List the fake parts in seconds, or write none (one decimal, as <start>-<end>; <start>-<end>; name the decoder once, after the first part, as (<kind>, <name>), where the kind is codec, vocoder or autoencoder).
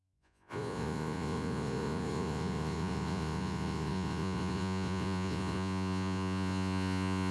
0.0-7.3 (vocoder, Vocos)